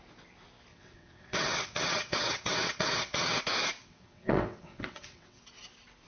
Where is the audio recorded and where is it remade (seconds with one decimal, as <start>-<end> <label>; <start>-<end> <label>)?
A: 0.0-0.7 recorded; 0.7-3.4 remade; 3.4-3.8 recorded; 3.8-5.4 remade; 5.4-6.1 recorded